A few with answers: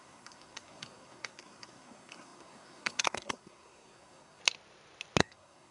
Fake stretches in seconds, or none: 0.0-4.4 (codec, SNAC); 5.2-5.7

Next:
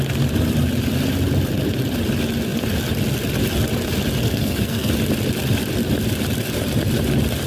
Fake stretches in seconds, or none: 4.2-4.9 (codec, SNAC)

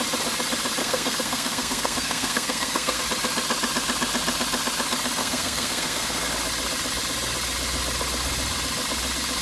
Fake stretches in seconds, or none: 0.8-3.0 (codec, SNAC); 5.2-6.3

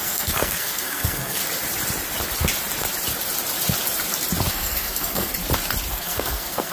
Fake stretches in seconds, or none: 0.0-1.4 (codec, SNAC); 4.5-5.3; 5.9-6.7

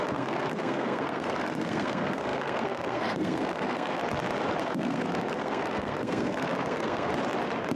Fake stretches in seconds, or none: 0.0-4.0 (codec, SNAC); 4.6-7.1

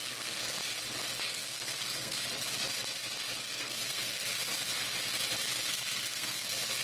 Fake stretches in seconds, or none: 0.0-0.6 (codec, SNAC); 1.2-2.3; 3.4-4.5; 5.7-6.8

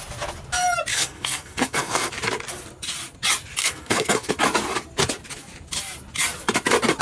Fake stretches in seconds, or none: 0.9-2.1 (codec, SNAC); 3.6-4.3